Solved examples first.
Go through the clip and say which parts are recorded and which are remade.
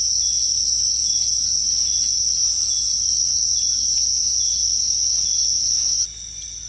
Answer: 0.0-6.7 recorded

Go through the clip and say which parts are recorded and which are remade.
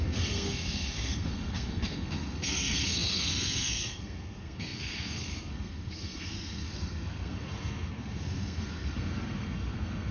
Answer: 0.0-10.1 remade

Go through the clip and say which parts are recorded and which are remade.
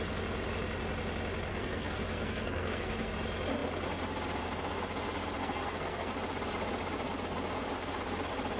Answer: 0.0-1.5 recorded; 1.5-3.1 remade; 3.1-5.4 recorded; 5.4-6.1 remade; 6.1-8.6 recorded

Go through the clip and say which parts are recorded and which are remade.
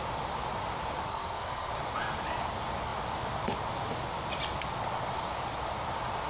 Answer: 0.0-1.1 recorded; 1.1-1.7 remade; 1.7-6.3 recorded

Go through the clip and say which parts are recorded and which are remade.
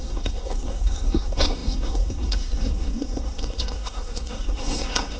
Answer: 0.0-5.2 remade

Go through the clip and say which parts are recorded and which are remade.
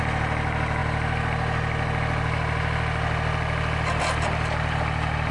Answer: 0.0-5.3 recorded